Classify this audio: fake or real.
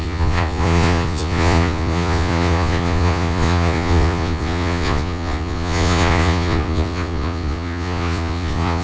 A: fake